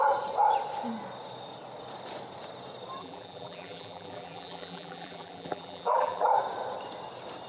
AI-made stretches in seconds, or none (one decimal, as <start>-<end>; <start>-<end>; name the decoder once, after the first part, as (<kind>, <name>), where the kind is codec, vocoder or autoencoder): 3.0-6.3 (vocoder, BigVGAN v2)